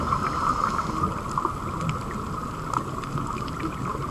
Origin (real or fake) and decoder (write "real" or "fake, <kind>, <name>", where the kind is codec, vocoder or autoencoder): real